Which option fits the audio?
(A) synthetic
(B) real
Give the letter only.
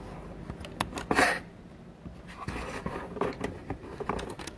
B